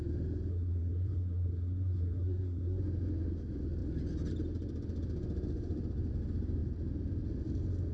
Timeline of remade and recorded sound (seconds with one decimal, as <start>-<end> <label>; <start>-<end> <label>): 0.0-0.5 recorded; 0.5-2.8 remade; 2.8-7.9 recorded